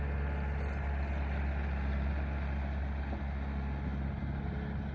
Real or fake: real